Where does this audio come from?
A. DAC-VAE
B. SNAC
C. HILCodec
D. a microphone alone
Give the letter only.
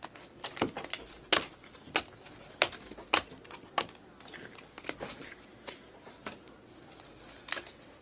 D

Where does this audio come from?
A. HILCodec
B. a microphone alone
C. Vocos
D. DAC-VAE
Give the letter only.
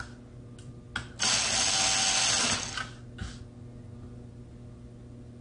B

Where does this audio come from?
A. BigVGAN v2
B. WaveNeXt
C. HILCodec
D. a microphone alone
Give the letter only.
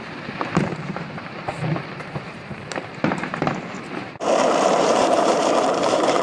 A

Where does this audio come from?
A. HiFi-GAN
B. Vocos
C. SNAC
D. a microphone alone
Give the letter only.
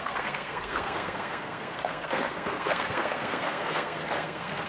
C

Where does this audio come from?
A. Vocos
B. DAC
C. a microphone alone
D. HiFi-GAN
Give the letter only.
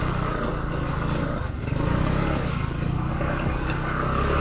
B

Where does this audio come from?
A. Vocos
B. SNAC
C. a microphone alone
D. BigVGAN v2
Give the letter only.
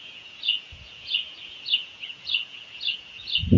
A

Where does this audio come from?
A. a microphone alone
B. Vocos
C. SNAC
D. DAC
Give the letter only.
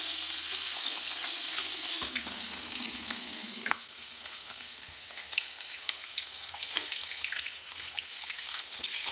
C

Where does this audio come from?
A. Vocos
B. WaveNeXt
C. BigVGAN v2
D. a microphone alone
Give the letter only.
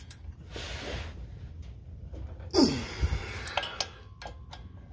D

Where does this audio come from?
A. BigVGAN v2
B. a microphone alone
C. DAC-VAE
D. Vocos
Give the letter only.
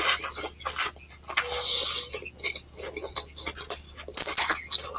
B